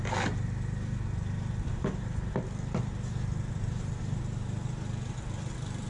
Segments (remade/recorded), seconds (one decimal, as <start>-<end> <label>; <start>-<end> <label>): 0.0-3.5 recorded; 3.5-5.9 remade